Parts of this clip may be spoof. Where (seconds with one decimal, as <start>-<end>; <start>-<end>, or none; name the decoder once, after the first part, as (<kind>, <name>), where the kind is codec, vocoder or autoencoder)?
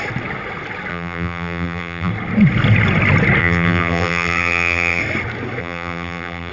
0.9-2.1 (vocoder, BigVGAN v2); 3.4-5.0; 5.6-6.5